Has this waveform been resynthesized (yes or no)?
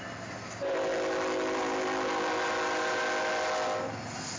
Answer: no